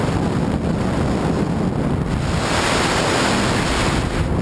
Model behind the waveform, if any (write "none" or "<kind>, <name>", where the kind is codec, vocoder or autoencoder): none